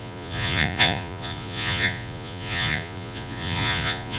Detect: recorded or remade remade